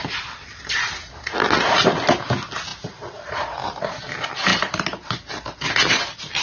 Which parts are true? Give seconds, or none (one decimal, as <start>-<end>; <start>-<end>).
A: 0.9-2.7; 4.0-4.5; 5.3-6.4